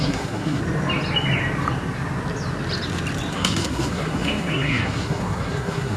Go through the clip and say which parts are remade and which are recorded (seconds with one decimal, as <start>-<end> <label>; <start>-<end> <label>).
0.0-0.6 remade; 0.6-3.3 recorded; 3.3-6.0 remade